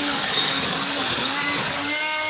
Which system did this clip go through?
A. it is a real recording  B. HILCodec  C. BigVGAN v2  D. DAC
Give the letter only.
D